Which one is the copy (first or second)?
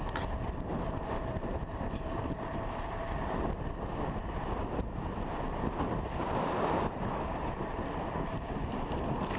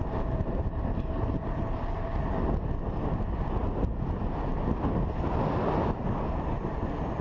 first